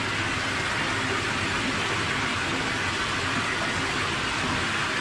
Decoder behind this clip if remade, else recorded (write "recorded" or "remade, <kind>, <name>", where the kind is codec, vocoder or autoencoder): recorded